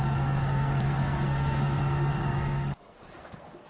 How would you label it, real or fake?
fake